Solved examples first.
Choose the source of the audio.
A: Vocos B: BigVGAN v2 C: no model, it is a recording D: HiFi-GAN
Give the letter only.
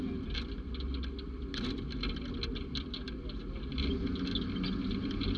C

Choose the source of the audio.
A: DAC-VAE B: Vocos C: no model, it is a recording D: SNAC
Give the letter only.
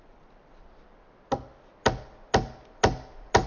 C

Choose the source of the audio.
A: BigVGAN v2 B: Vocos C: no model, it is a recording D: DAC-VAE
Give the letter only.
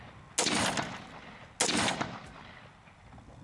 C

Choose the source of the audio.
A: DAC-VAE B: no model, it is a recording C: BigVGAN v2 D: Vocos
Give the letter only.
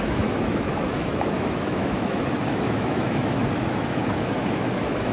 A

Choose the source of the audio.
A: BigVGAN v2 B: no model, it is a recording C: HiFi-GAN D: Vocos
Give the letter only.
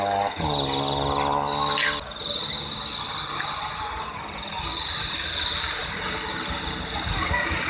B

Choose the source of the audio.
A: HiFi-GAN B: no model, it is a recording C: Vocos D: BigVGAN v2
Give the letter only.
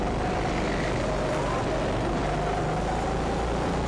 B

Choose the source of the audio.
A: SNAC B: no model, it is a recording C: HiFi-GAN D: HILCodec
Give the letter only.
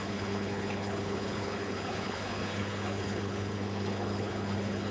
D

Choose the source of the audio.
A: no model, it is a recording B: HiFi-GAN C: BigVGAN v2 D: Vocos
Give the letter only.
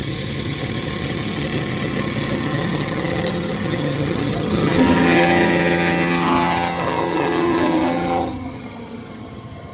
B